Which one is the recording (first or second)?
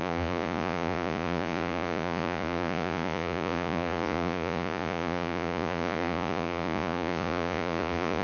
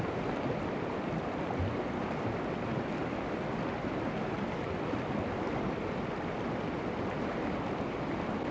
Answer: second